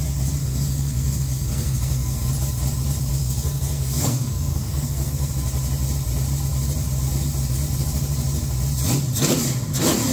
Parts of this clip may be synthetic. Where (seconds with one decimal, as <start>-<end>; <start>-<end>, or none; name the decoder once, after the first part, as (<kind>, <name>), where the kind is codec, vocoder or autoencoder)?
0.4-2.3 (codec, SNAC); 3.1-5.3

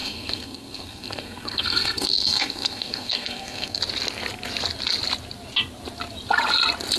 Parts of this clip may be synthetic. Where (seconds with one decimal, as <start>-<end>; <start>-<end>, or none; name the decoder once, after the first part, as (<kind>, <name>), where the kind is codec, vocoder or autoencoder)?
0.0-3.8 (codec, SNAC)

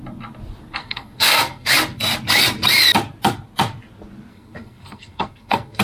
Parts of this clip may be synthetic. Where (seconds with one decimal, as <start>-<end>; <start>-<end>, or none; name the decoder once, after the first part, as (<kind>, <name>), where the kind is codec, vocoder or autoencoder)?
0.8-1.7 (codec, SNAC); 4.3-5.8